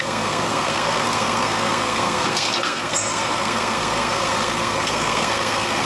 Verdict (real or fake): fake